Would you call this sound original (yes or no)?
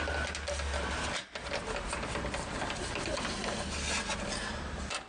yes